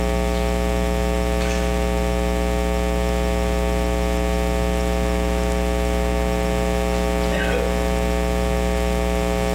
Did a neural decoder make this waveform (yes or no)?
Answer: no